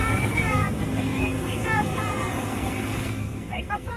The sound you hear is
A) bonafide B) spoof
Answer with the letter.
B